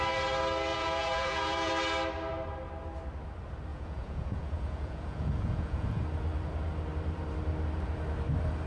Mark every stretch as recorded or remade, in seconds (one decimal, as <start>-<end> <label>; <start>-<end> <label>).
0.0-0.7 recorded; 0.7-1.7 remade; 1.7-3.7 recorded; 3.7-6.0 remade; 6.0-8.7 recorded